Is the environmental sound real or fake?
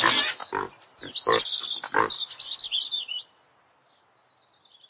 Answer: real